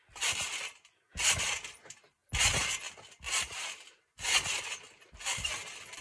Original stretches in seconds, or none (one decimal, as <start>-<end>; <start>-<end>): 0.0-6.0